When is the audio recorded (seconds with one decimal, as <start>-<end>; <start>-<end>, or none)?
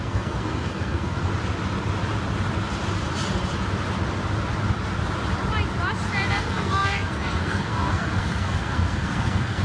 1.3-6.3